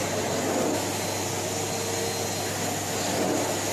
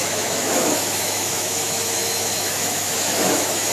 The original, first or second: first